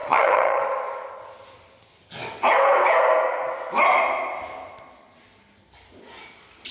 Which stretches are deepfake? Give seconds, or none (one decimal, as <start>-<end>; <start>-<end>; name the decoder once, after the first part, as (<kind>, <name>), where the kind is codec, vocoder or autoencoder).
0.0-0.6 (vocoder, HiFi-GAN)